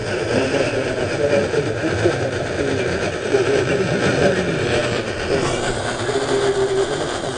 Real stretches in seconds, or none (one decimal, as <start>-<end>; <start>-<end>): 0.0-7.4